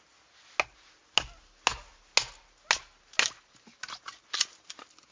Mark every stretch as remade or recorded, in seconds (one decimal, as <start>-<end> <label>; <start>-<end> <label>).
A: 0.0-5.1 recorded